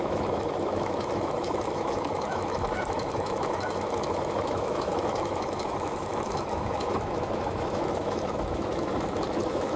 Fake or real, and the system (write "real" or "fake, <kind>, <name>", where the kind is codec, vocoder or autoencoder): fake, autoencoder, DAC-VAE